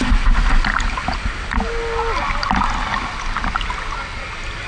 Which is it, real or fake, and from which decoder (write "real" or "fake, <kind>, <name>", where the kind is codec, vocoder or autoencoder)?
real